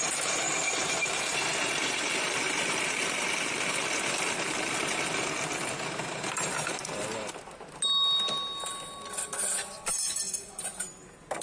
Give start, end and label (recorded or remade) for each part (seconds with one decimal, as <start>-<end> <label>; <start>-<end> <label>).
0.0-1.5 recorded; 1.5-3.3 remade; 3.3-11.4 recorded